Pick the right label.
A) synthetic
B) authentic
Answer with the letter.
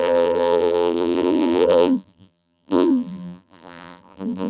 A